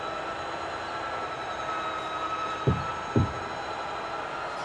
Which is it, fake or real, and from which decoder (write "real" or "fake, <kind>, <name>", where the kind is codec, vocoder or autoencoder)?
real